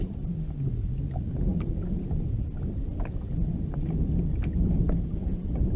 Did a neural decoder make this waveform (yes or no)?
no